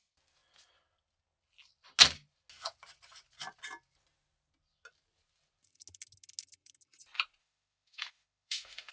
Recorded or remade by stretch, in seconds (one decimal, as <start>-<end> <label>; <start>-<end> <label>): 0.0-7.4 recorded; 7.4-8.9 remade